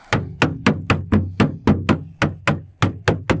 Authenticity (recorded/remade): recorded